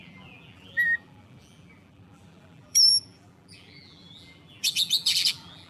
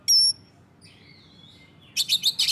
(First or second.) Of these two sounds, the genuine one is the second